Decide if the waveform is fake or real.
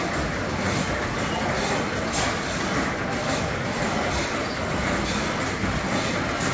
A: real